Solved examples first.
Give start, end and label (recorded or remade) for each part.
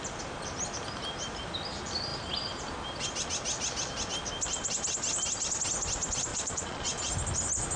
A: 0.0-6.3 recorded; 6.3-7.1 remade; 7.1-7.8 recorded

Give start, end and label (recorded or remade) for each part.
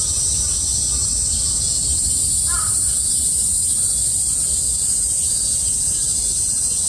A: 0.0-6.9 recorded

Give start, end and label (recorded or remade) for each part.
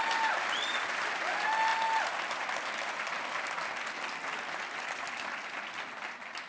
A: 0.0-6.5 recorded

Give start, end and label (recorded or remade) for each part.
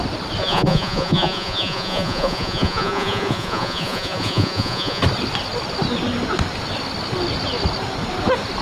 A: 0.0-0.4 recorded; 0.4-5.0 remade; 5.0-8.6 recorded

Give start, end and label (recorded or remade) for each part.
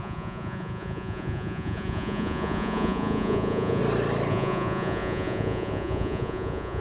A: 0.0-3.8 remade; 3.8-4.3 recorded; 4.3-6.8 remade